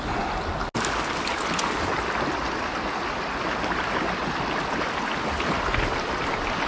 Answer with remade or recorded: recorded